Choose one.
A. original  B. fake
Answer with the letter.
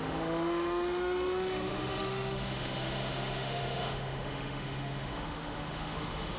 B